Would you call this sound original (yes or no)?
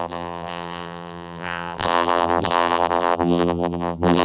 no